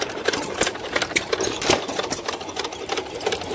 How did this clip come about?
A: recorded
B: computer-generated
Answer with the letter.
B